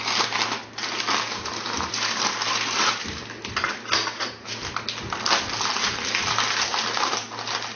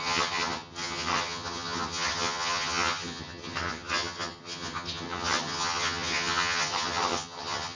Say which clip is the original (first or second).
first